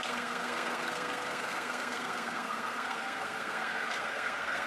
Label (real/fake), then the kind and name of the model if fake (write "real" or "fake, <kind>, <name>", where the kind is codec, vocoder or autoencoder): fake, codec, SNAC